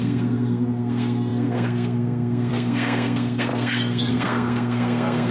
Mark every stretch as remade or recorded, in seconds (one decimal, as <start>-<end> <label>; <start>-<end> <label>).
0.0-5.3 remade